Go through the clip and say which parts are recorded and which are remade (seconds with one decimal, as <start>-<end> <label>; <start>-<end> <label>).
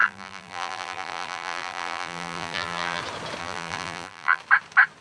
0.0-3.0 remade; 3.0-3.4 recorded; 3.4-4.4 remade; 4.4-5.0 recorded